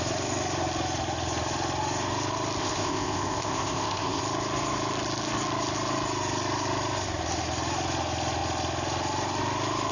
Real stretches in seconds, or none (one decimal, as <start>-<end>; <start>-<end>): 0.0-2.6; 4.2-9.9